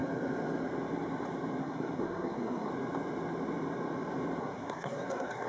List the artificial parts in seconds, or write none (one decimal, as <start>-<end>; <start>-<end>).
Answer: 1.6-2.7; 4.4-5.5